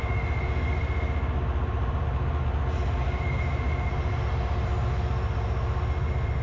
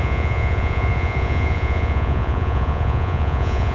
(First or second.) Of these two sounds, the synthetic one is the second